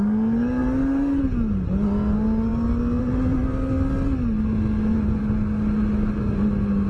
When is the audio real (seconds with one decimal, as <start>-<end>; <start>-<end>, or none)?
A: 0.0-6.9